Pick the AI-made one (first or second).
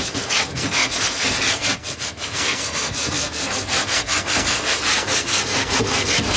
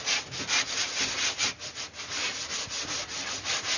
first